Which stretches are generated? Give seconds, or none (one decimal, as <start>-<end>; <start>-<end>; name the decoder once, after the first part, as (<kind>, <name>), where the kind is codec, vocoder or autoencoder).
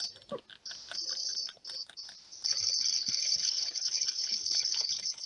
3.2-5.3 (codec, HILCodec)